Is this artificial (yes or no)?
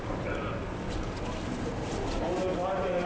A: no